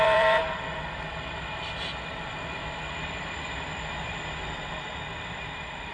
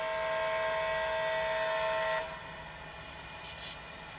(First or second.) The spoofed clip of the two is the first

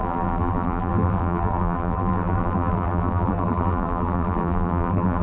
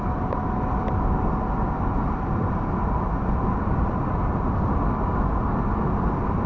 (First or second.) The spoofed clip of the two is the first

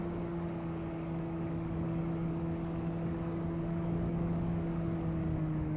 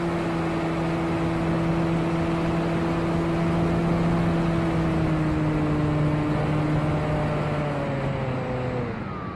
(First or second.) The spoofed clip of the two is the first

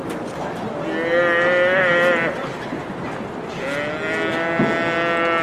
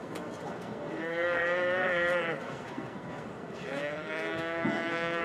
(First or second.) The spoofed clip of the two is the second